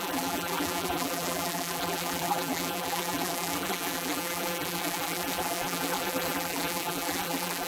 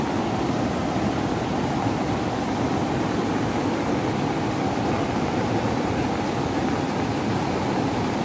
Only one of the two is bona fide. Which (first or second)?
second